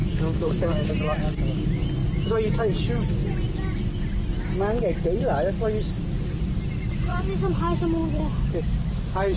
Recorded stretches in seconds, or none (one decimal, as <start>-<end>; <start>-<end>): 0.9-9.4